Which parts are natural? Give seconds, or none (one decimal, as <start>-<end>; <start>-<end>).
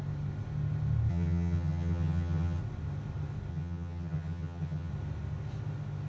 0.0-1.1; 2.6-3.5; 4.9-6.1